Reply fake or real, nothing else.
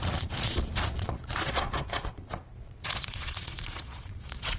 fake